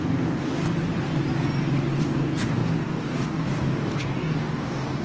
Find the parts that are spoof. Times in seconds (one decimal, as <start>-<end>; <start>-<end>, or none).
0.0-0.6; 2.0-5.0